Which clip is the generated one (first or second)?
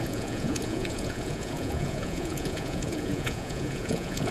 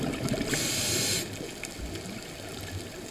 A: first